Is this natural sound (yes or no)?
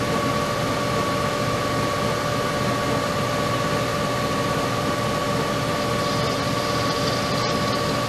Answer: yes